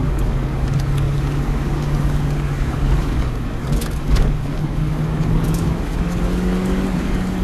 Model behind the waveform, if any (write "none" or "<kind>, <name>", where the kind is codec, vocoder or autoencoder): codec, DAC